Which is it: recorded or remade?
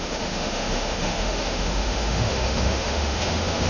remade